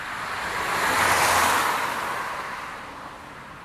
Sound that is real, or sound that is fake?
real